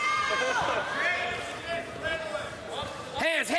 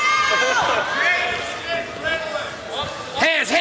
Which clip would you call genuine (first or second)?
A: second